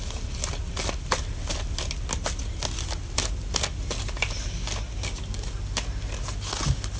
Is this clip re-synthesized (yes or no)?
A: no